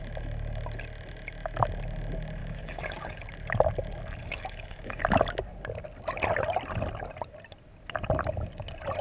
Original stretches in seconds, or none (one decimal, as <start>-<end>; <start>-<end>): 0.0-2.4; 3.2-4.2; 5.0-9.0